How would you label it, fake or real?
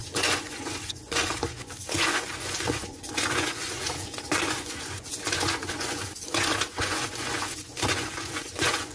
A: fake